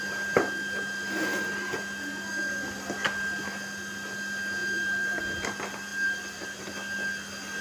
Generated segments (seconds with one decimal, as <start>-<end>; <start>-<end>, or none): 4.6-5.2; 5.9-6.6